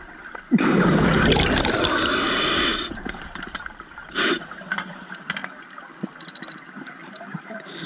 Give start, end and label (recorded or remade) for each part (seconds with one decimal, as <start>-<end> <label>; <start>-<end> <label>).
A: 0.0-2.7 recorded; 2.7-5.1 remade; 5.1-7.0 recorded; 7.0-7.9 remade